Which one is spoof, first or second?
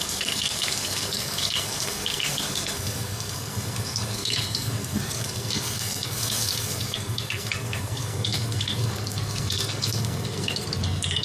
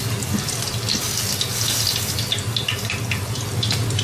first